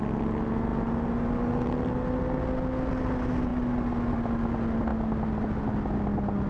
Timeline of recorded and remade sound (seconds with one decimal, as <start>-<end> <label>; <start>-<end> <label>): 0.0-6.5 recorded